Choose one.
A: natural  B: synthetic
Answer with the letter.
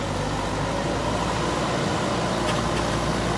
A